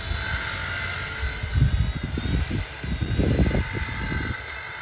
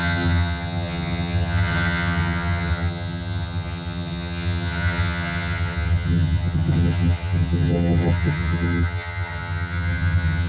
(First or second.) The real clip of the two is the first